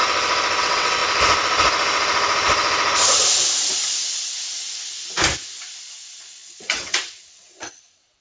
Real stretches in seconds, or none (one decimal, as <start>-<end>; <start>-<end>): 0.0-0.6; 1.0-5.9